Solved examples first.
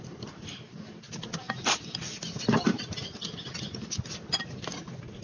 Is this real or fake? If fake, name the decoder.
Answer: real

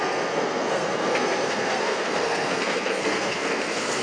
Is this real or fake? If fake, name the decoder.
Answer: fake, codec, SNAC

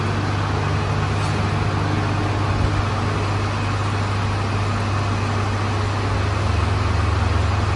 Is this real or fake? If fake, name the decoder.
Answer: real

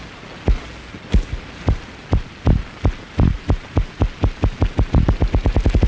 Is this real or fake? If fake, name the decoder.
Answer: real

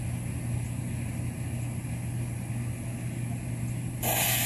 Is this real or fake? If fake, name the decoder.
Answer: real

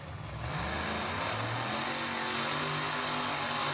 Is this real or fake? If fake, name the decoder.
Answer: real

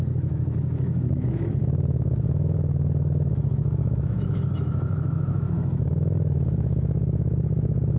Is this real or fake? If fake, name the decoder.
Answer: fake, autoencoder, DAC-VAE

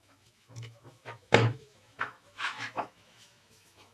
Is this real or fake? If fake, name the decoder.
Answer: fake, autoencoder, DAC-VAE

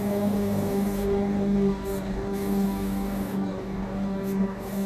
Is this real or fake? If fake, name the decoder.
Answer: fake, codec, DAC